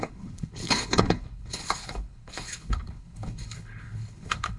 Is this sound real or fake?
fake